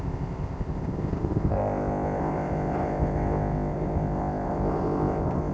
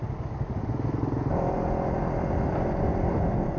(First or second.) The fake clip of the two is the first